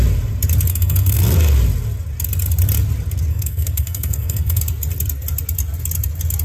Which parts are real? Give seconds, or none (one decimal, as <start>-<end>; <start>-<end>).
0.0-0.7; 1.2-3.3; 4.6-6.4